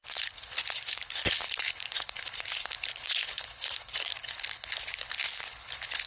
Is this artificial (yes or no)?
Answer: yes